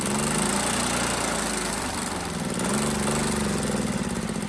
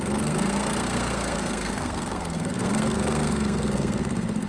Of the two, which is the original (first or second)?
first